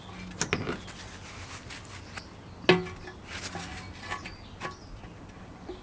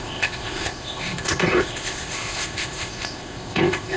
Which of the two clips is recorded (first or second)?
first